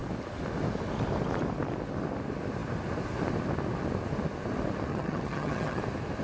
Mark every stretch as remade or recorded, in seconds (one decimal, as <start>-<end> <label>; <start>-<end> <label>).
0.0-4.9 recorded; 4.9-5.8 remade; 5.8-6.2 recorded